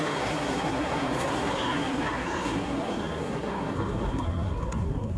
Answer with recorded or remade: remade